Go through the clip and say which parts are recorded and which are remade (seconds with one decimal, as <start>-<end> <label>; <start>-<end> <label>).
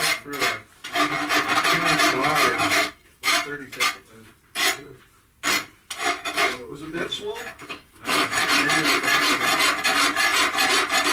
0.0-2.2 recorded; 2.2-3.7 remade; 3.7-6.0 recorded; 6.0-8.5 remade; 8.5-11.1 recorded